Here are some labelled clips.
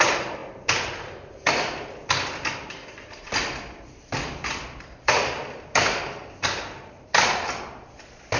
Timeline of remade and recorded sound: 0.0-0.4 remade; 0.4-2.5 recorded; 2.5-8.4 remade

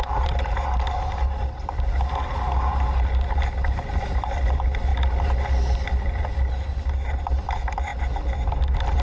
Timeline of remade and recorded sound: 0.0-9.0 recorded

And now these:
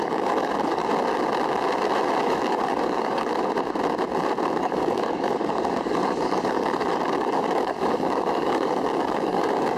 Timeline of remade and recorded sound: 0.0-0.9 remade; 0.9-2.2 recorded; 2.2-3.3 remade; 3.3-4.6 recorded; 4.6-9.8 remade

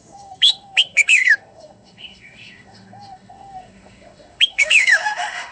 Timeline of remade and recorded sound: 0.0-5.5 remade

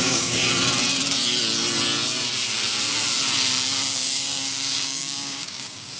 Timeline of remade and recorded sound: 0.0-0.4 remade; 0.4-4.0 recorded; 4.0-6.0 remade

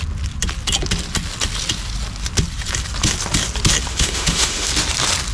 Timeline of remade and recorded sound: 0.0-3.9 recorded; 3.9-4.7 remade; 4.7-5.3 recorded

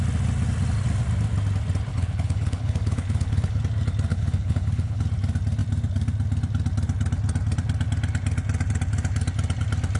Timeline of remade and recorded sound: 0.0-1.9 recorded; 1.9-3.6 remade; 3.6-4.1 recorded; 4.1-5.0 remade; 5.0-10.0 recorded

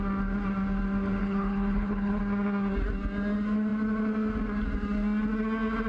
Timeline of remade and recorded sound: 0.0-1.2 recorded; 1.2-2.2 remade; 2.2-5.9 recorded